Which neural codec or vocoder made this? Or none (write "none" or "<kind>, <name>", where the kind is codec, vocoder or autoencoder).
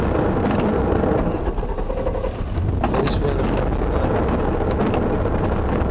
none